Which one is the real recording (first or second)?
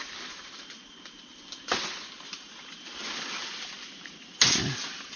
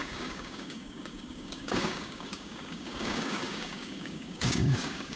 first